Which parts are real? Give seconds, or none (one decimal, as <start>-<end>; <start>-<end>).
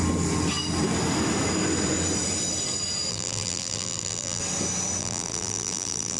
0.0-3.1; 4.4-5.0